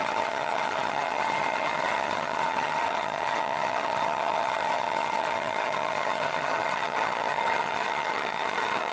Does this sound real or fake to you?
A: fake